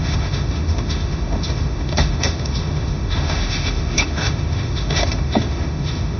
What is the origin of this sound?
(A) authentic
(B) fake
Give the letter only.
B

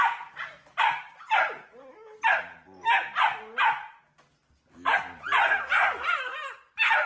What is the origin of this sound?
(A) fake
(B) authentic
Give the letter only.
B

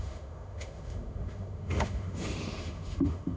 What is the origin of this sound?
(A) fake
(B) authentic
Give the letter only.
A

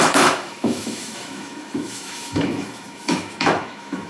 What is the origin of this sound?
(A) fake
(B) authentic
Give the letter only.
A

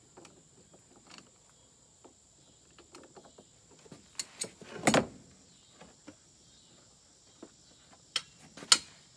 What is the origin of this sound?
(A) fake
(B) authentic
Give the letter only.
B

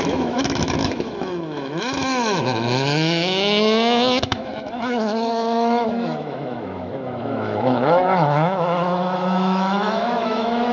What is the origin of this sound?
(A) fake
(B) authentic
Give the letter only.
A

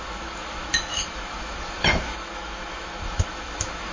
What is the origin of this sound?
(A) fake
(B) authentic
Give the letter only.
A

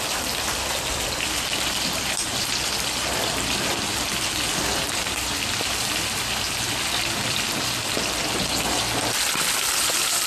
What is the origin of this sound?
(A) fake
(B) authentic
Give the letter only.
B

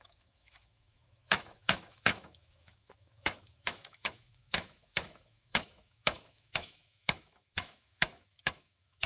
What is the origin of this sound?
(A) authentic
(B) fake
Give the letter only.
B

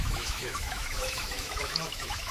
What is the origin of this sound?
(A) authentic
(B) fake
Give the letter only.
B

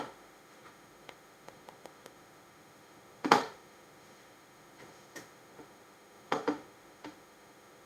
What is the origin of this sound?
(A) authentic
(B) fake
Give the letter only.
B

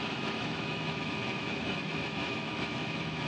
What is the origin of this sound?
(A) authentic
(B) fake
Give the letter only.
B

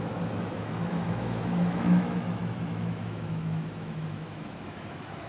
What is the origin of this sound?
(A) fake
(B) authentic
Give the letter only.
A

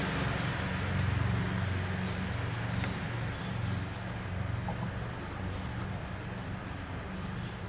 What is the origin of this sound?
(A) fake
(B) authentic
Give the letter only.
B